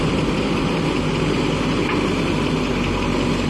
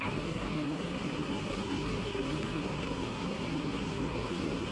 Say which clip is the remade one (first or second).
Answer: second